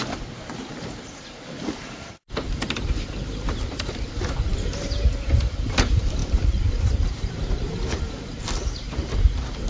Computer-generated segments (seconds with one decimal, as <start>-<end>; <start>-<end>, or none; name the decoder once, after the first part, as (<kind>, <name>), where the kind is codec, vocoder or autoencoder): 0.0-9.7 (vocoder, BigVGAN v2)